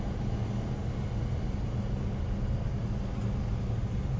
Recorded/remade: recorded